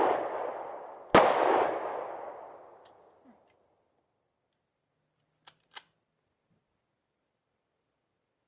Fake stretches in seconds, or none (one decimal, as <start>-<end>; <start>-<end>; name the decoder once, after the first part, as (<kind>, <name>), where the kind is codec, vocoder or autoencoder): none